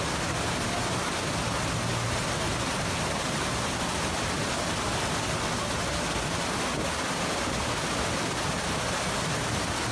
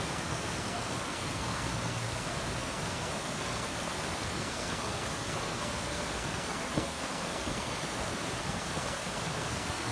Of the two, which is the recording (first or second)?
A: first